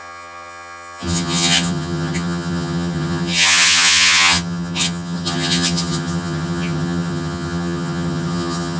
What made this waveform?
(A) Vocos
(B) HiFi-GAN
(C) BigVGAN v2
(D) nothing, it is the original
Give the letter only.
B